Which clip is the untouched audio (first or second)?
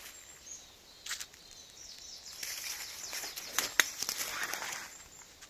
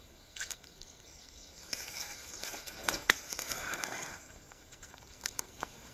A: first